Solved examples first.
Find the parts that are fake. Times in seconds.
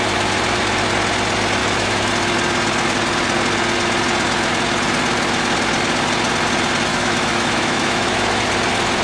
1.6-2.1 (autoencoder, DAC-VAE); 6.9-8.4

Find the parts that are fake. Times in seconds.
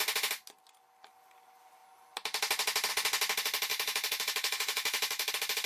3.7-5.3 (autoencoder, DAC-VAE)